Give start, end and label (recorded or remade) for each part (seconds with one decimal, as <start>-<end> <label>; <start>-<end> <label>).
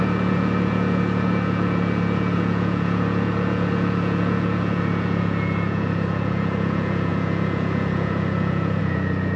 0.0-9.4 remade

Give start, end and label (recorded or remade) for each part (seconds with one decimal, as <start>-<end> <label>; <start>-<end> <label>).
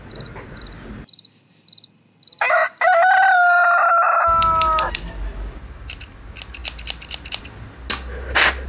0.0-8.7 recorded